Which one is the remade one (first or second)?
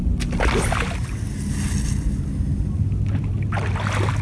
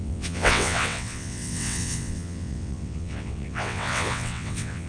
second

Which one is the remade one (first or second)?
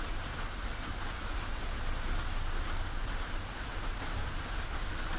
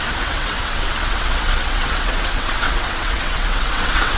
second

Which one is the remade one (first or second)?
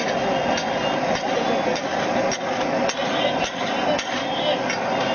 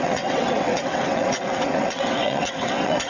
second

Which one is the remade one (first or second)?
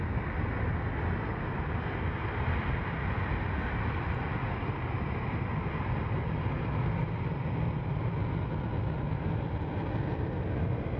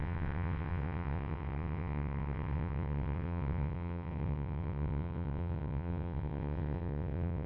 second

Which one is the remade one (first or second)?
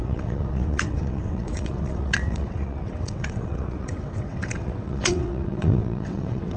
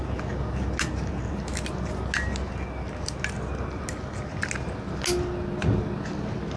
first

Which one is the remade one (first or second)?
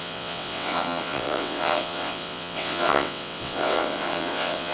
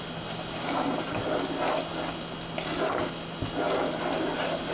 first